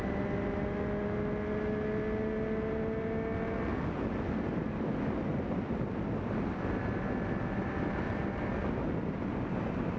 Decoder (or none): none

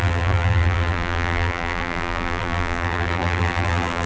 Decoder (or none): vocoder, BigVGAN v2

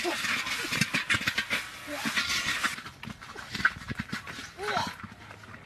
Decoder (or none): none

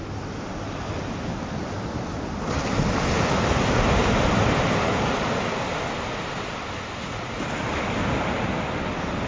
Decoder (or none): none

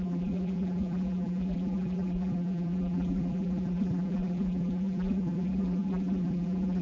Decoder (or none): vocoder, BigVGAN v2